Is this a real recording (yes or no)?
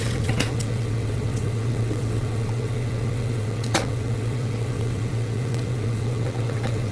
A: no